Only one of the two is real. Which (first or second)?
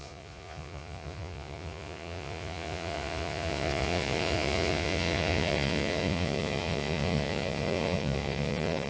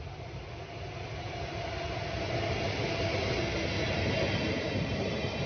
second